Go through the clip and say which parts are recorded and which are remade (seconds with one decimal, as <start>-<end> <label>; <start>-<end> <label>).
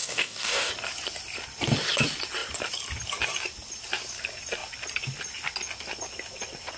0.0-0.7 remade; 0.7-6.8 recorded